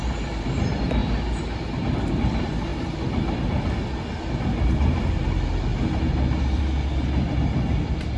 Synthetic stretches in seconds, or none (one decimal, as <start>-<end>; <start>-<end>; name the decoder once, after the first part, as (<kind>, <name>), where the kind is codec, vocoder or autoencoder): none